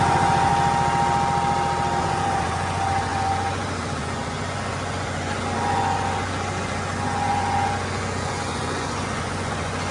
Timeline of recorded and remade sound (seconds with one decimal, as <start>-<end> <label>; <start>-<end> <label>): 0.0-0.5 remade; 0.5-2.0 recorded; 2.0-9.9 remade